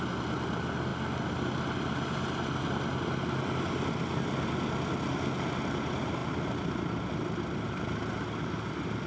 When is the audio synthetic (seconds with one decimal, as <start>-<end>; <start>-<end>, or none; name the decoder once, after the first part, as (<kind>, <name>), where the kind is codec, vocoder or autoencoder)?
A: none